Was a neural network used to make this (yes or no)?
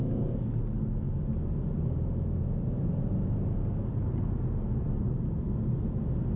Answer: no